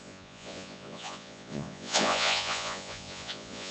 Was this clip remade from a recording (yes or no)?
yes